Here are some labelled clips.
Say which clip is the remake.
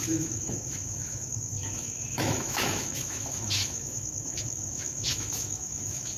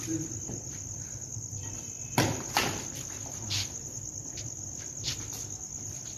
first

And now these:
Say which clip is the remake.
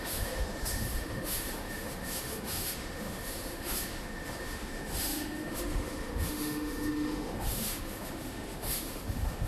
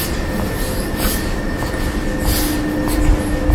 first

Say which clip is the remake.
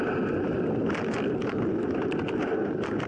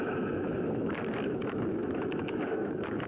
second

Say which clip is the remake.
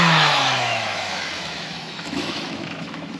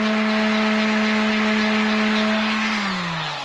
first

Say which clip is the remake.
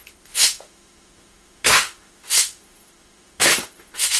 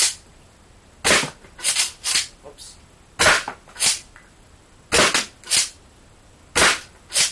first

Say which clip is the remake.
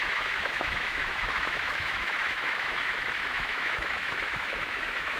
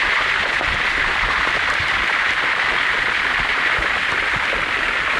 first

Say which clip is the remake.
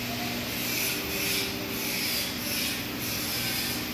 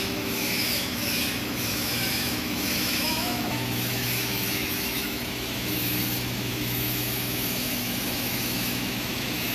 second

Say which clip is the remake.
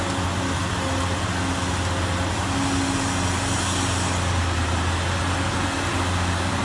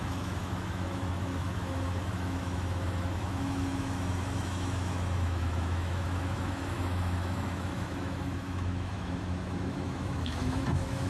second